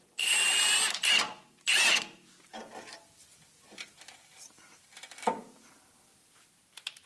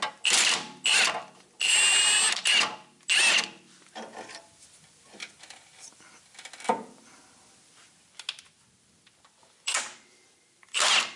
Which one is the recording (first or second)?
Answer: second